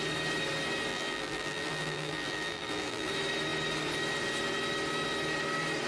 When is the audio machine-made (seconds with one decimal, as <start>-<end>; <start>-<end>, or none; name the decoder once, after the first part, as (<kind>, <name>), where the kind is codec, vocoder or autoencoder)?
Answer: 0.9-3.1 (vocoder, BigVGAN v2)